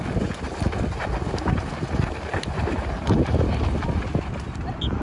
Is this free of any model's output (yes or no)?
yes